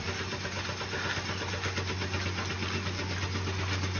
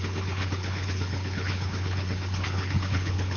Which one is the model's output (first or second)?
second